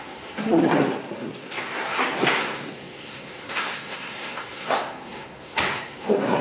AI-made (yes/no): yes